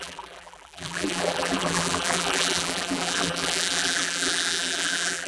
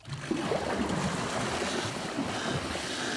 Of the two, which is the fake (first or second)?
first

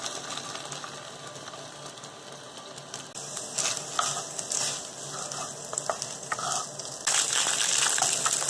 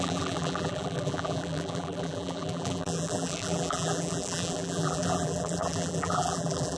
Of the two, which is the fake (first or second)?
second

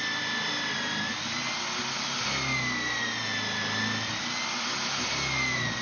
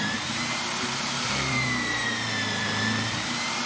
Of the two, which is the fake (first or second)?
second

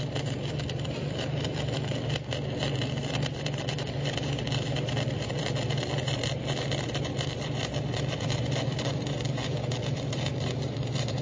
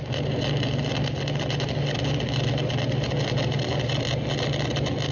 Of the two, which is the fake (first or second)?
first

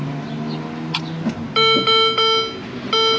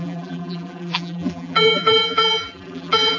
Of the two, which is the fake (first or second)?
second